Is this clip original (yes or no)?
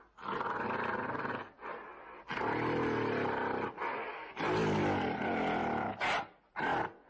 yes